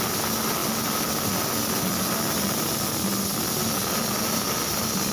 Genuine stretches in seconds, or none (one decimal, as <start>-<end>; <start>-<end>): 0.0-0.6; 1.3-5.1